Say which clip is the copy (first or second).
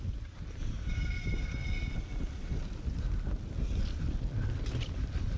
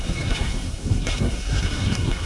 second